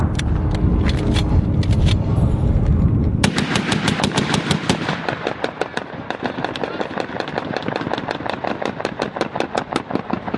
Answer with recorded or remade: recorded